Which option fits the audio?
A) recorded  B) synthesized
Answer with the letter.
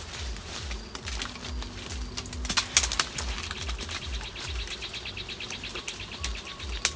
A